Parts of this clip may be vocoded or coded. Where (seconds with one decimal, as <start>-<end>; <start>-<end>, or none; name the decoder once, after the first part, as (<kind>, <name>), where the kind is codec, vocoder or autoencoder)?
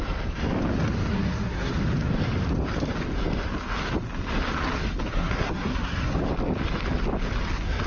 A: 1.1-1.7 (codec, SNAC); 5.1-6.2